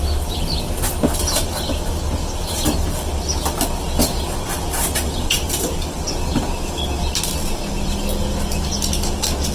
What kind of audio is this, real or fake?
real